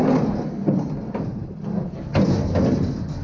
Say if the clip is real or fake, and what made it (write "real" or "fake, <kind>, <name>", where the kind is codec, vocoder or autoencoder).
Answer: real